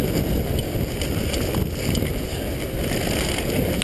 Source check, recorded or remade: recorded